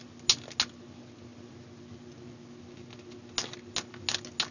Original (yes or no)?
yes